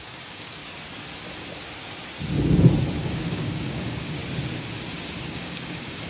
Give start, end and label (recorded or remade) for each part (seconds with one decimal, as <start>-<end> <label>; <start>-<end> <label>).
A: 0.0-0.6 remade; 0.6-3.0 recorded; 3.0-4.2 remade; 4.2-5.3 recorded; 5.3-6.1 remade